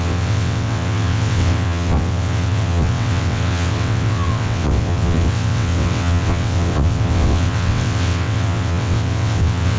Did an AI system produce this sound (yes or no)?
yes